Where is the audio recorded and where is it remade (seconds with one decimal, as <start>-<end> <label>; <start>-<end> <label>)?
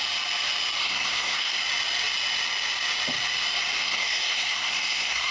0.0-0.8 recorded; 0.8-1.6 remade; 1.6-3.8 recorded; 3.8-5.3 remade